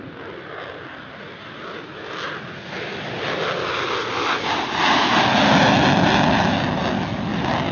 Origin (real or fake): real